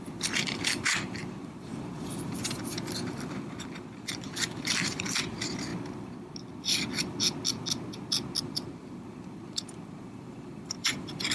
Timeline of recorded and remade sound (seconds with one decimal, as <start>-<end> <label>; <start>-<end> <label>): 0.0-5.7 remade; 5.7-8.4 recorded; 8.4-11.3 remade